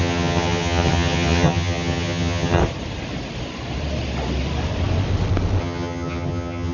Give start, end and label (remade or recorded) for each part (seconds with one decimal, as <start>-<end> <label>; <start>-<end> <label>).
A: 0.0-2.6 remade; 2.6-5.6 recorded; 5.6-6.7 remade